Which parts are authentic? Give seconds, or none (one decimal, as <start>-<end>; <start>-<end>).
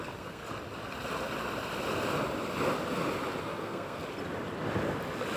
0.4-3.4; 4.0-5.4